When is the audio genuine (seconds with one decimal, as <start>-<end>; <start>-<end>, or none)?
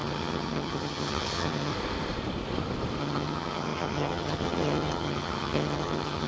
1.7-3.0